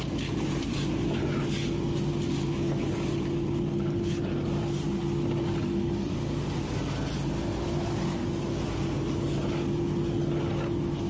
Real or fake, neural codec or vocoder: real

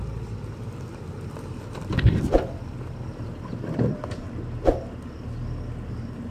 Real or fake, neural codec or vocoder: real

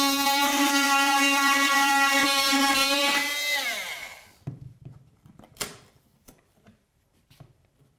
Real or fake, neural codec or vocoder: fake, vocoder, BigVGAN v2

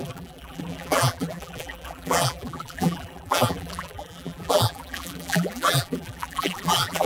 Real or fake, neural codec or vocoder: fake, vocoder, BigVGAN v2